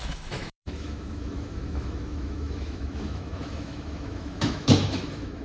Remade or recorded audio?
remade